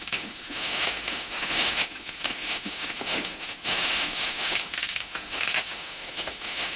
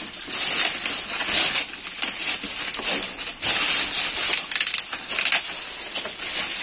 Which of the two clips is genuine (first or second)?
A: second